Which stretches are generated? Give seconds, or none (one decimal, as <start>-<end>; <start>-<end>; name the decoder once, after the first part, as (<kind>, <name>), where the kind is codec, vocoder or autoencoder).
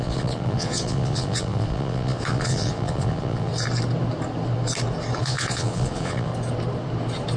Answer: 0.0-3.5 (vocoder, Vocos); 5.2-6.3